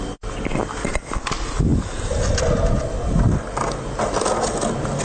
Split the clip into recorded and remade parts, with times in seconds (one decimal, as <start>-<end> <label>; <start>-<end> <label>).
0.0-5.0 recorded